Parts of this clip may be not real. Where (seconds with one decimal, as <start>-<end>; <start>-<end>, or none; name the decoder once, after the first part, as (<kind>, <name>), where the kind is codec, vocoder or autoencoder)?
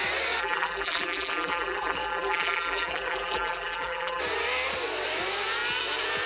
0.4-4.2 (vocoder, BigVGAN v2)